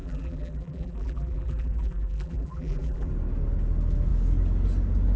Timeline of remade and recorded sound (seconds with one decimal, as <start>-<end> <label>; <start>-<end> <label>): 0.0-3.1 remade; 3.1-5.2 recorded